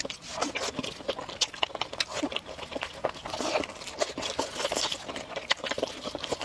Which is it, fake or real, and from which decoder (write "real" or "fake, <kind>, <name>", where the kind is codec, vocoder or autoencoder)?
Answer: real